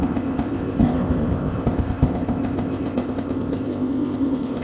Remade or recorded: remade